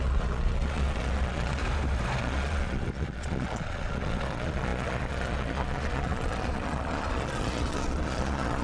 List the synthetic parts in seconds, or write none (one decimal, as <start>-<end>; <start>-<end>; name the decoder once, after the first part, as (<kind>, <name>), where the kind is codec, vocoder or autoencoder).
0.0-1.6 (vocoder, Vocos); 2.2-8.6